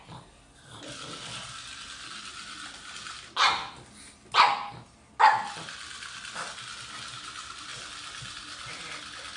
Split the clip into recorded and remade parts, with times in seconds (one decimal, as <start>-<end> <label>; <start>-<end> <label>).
0.0-9.4 recorded